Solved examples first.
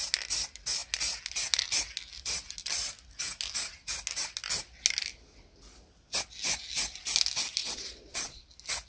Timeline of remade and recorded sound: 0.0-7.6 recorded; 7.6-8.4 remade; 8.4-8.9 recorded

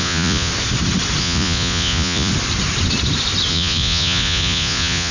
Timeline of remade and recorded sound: 0.0-0.5 remade; 0.5-1.2 recorded; 1.2-2.3 remade; 2.3-3.5 recorded; 3.5-5.1 remade

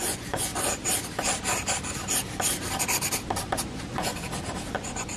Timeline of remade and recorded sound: 0.0-0.5 remade; 0.5-3.6 recorded; 3.6-4.1 remade; 4.1-4.7 recorded; 4.7-5.2 remade

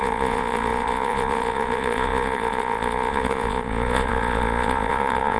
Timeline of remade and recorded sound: 0.0-5.4 remade

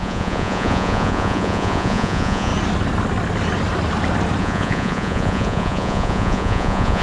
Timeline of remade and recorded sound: 0.0-2.5 remade; 2.5-4.4 recorded; 4.4-7.0 remade